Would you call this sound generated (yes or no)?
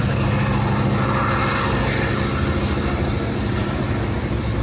no